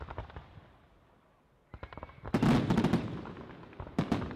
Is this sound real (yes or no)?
yes